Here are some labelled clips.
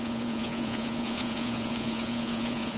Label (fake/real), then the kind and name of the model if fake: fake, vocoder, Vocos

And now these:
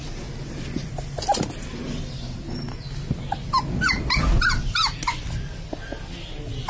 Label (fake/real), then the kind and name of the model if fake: real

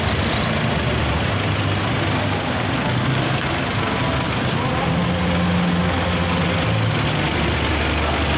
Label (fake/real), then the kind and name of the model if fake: real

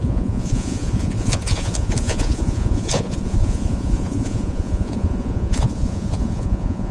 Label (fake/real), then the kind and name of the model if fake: fake, vocoder, Vocos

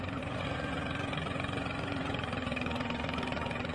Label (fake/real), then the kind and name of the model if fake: fake, vocoder, Vocos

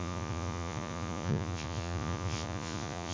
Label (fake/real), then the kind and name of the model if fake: fake, vocoder, Vocos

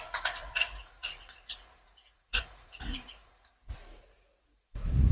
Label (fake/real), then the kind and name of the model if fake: fake, vocoder, Vocos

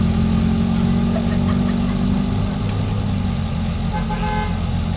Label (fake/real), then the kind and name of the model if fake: real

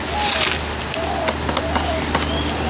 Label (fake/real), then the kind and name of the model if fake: real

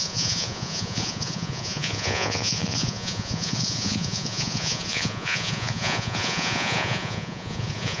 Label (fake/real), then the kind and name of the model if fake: fake, vocoder, Vocos